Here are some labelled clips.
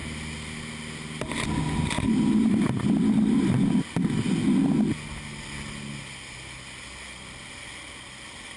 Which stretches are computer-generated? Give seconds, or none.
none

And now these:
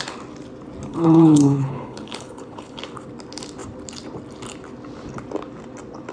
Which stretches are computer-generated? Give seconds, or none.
0.9-2.8

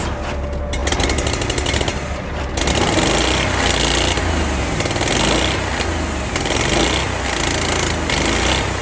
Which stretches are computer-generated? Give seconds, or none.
none

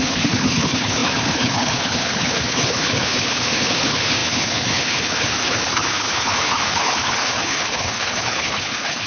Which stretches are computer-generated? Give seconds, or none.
0.0-9.1

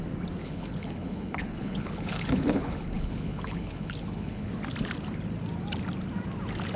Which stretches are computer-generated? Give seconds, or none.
0.4-4.5

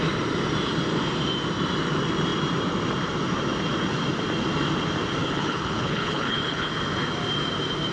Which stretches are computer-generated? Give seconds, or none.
5.2-6.7

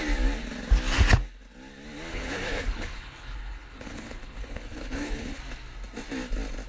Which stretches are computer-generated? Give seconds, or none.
2.1-5.4

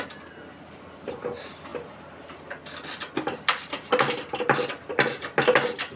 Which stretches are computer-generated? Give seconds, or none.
none